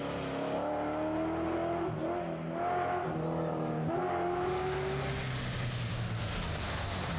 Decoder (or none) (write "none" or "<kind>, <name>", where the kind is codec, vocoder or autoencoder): none